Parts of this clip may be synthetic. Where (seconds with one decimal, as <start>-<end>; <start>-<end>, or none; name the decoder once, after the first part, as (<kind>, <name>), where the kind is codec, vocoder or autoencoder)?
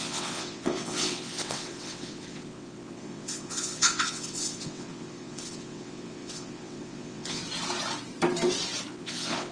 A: 0.0-7.4 (vocoder, WaveNeXt); 8.9-9.5